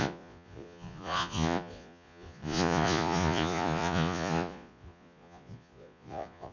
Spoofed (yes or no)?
yes